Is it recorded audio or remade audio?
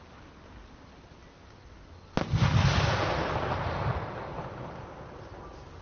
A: recorded